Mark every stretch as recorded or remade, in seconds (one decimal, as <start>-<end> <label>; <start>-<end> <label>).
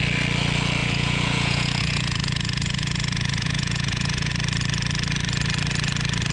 0.0-0.8 recorded; 0.8-4.3 remade; 4.3-6.3 recorded